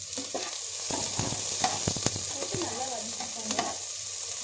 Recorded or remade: recorded